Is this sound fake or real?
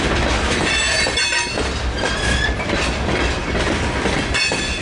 real